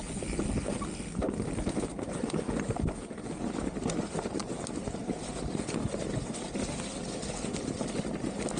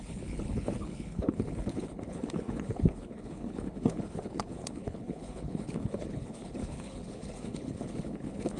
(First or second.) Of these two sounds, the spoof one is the second